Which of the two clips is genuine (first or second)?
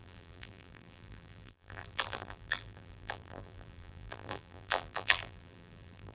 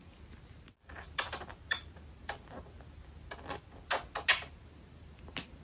second